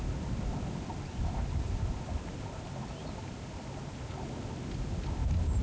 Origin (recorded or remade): recorded